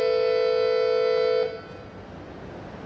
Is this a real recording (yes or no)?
yes